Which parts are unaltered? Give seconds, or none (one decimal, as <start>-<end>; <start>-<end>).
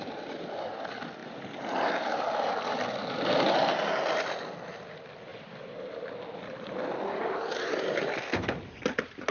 0.0-1.2; 2.4-5.3; 7.8-9.3